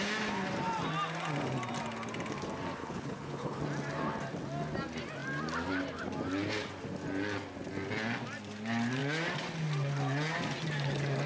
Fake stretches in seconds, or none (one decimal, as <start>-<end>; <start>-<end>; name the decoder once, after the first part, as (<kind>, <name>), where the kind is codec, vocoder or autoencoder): 2.8-3.6 (codec, HILCodec)